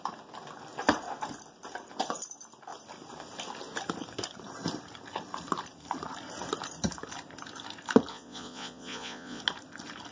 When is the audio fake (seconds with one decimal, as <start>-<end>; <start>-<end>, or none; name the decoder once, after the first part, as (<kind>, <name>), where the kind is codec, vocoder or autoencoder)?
8.1-9.4 (vocoder, Vocos)